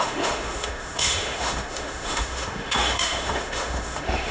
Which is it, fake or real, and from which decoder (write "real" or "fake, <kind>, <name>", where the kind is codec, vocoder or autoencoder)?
fake, autoencoder, DAC-VAE